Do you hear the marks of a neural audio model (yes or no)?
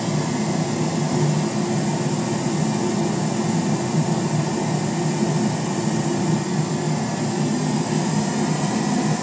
no